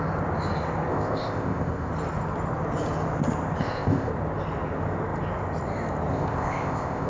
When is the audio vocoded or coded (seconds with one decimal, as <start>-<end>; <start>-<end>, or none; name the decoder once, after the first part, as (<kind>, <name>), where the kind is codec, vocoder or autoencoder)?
0.9-1.9 (codec, ZipCodec); 3.6-4.1; 6.1-7.1